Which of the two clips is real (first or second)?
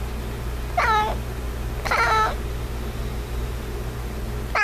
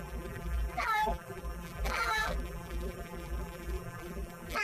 first